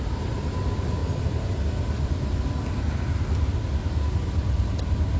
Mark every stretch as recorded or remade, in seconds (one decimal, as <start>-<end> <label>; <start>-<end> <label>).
0.0-5.2 recorded